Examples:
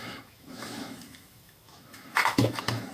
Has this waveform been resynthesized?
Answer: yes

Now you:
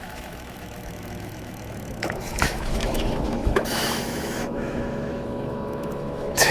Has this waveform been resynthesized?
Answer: yes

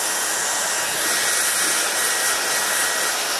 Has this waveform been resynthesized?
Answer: no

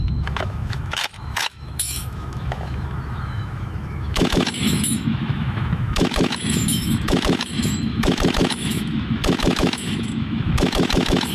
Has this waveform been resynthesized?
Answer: yes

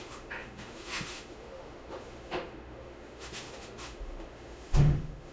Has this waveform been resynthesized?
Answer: yes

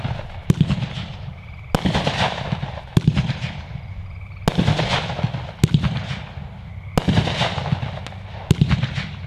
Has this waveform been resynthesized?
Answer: no